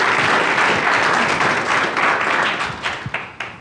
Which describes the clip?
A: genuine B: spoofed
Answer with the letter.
A